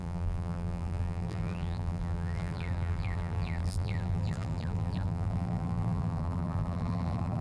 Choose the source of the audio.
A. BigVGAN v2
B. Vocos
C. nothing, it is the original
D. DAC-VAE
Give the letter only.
A